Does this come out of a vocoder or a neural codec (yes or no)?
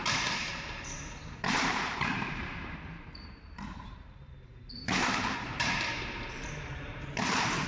yes